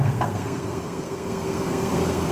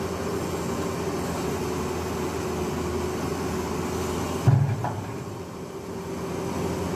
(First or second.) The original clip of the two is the second